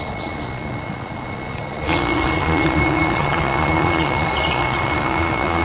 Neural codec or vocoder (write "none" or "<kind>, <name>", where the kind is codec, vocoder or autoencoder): vocoder, Vocos